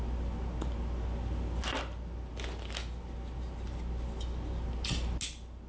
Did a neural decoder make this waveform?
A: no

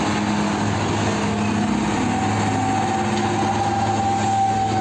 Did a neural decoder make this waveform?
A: no